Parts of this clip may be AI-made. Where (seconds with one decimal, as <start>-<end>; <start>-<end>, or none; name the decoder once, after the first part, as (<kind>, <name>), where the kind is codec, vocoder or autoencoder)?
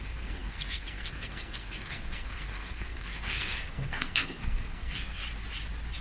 0.0-5.2 (codec, SNAC)